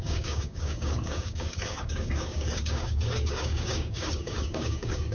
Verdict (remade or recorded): remade